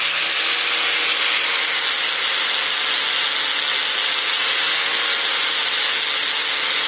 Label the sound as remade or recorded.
recorded